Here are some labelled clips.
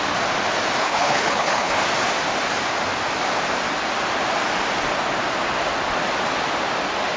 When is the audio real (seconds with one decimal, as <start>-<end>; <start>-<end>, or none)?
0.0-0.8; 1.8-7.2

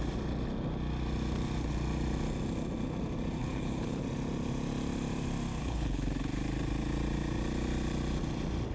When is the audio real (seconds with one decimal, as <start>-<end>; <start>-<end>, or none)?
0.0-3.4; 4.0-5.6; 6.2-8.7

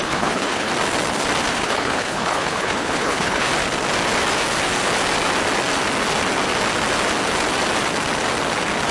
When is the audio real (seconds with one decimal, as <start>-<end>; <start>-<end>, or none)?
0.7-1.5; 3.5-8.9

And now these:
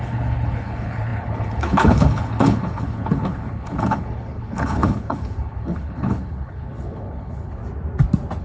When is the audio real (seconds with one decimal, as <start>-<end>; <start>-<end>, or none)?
7.6-8.4

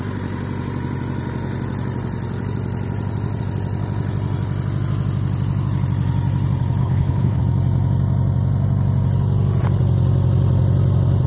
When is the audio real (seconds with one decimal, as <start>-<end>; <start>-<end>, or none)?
0.0-6.8; 7.4-11.3

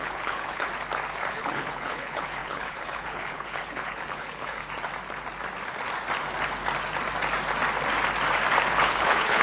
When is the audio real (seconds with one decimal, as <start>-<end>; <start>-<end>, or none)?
0.7-1.3; 4.6-8.7

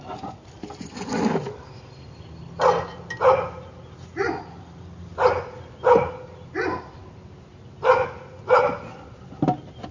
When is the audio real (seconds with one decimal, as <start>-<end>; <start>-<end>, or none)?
0.0-9.9

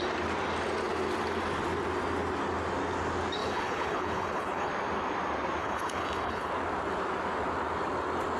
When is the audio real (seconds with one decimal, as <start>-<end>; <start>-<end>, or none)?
0.0-3.4; 4.7-5.6; 6.5-8.4